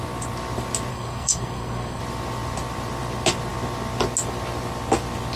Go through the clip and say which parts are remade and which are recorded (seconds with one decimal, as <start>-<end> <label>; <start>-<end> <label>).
0.0-0.9 recorded; 0.9-2.0 remade; 2.0-5.4 recorded